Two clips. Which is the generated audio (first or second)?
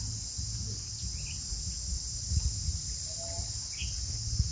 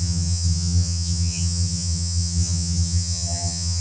second